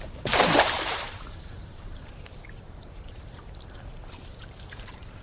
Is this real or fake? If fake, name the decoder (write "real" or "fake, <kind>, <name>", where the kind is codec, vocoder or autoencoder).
fake, vocoder, BigVGAN v2